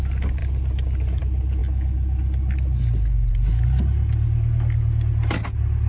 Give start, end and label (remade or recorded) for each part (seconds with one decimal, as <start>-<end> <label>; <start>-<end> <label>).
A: 0.0-5.9 recorded